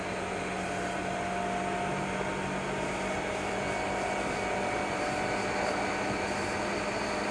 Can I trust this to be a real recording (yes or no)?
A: yes